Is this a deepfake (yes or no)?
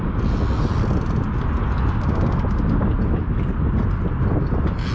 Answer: no